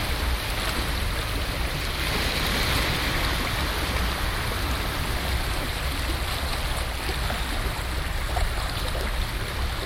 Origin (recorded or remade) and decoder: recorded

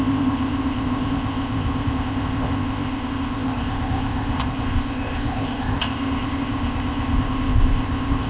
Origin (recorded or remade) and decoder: remade, codec, ZipCodec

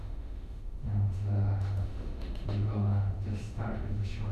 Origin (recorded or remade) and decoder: remade, autoencoder, DAC-VAE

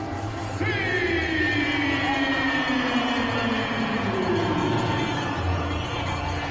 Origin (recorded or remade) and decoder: remade, vocoder, Vocos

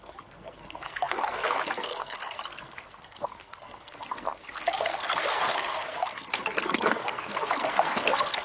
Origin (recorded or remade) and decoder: remade, codec, SNAC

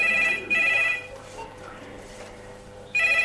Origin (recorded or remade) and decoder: remade, vocoder, BigVGAN v2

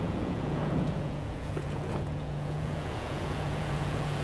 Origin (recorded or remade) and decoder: remade, vocoder, Vocos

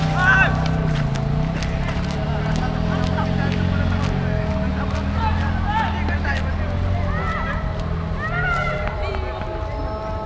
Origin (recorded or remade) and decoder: recorded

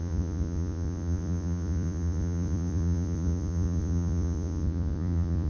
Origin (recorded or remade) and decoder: remade, vocoder, Vocos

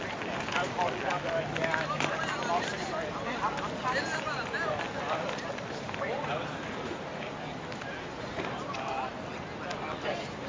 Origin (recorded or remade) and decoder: recorded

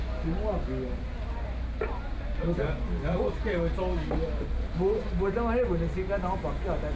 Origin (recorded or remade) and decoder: recorded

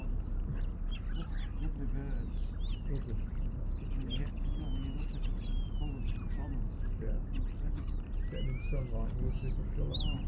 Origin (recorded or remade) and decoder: recorded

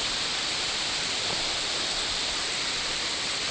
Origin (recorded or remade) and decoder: recorded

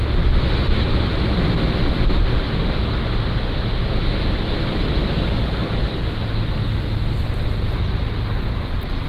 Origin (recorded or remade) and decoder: recorded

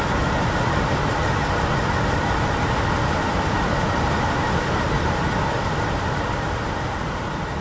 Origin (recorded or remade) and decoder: recorded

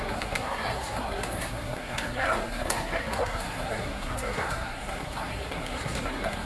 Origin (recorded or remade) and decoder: remade, codec, SNAC